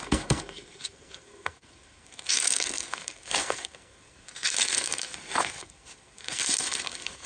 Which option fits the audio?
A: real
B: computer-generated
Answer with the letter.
B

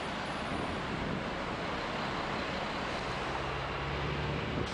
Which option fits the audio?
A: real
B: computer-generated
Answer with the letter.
A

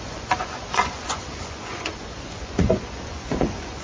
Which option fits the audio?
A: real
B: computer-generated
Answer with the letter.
B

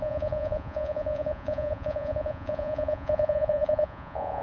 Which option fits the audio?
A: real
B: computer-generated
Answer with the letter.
B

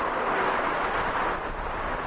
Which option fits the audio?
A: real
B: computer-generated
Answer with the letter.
A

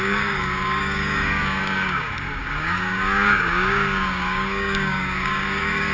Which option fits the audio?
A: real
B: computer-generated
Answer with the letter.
B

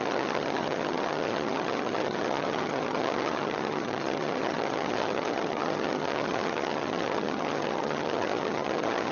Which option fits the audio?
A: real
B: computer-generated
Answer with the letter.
B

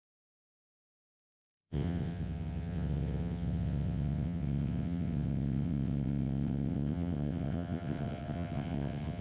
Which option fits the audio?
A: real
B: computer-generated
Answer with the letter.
B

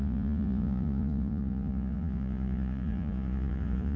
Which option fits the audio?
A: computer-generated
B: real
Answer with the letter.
A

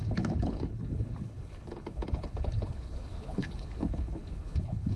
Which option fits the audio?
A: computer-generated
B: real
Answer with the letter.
A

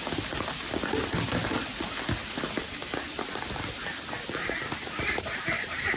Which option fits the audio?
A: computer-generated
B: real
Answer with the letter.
B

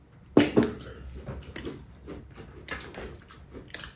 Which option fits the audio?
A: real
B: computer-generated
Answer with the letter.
A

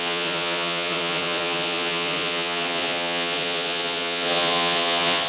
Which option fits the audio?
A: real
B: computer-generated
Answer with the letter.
B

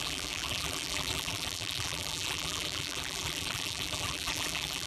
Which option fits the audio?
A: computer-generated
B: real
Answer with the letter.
A